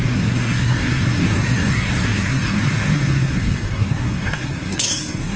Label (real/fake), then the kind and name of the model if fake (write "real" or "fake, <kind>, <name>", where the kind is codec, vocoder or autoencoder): fake, codec, SNAC